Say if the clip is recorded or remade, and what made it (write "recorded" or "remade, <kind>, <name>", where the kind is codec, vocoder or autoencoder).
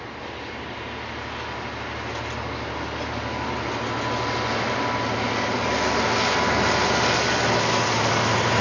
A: recorded